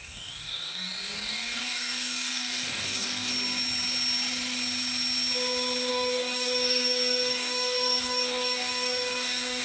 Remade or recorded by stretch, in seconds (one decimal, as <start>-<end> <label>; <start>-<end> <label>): 0.0-3.3 remade; 3.3-5.9 recorded; 5.9-9.6 remade